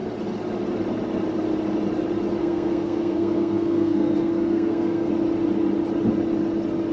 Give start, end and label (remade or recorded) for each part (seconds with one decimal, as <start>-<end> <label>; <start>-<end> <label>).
0.0-2.4 recorded; 2.4-5.1 remade; 5.1-6.9 recorded